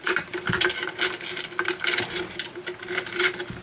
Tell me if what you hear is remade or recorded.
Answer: recorded